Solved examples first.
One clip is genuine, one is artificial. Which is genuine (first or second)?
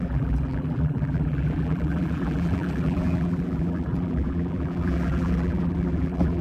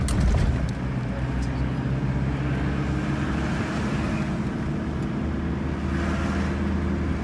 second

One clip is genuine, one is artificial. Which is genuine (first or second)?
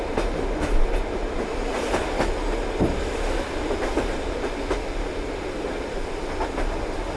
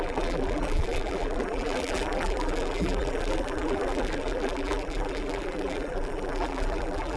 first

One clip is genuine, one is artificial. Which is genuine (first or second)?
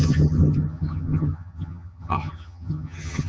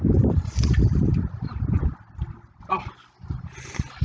second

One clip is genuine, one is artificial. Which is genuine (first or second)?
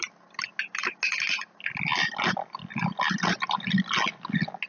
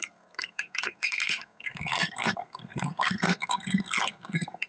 first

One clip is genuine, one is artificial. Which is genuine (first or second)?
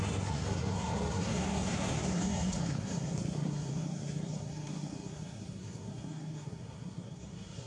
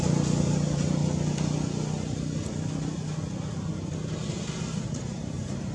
second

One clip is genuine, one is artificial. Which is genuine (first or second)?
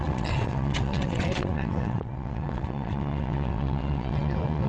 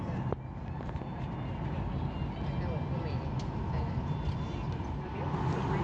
second